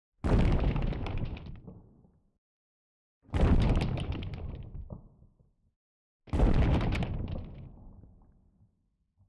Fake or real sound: real